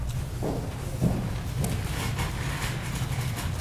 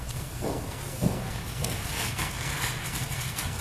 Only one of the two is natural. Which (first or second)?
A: first